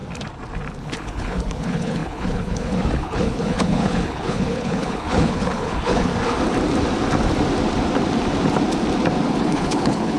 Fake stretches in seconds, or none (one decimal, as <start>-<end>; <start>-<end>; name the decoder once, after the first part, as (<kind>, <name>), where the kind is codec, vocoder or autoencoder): 0.8-6.1 (codec, HILCodec); 9.3-10.2